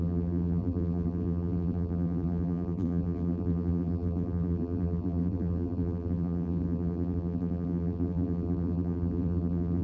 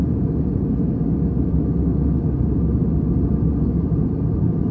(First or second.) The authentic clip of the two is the second